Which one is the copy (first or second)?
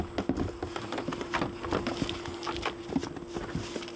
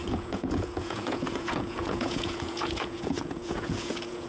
second